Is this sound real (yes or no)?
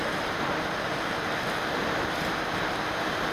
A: no